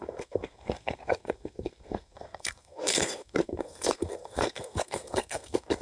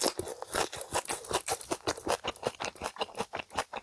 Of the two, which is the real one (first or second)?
second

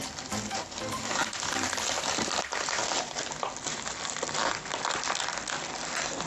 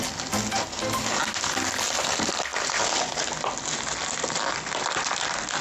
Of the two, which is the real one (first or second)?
second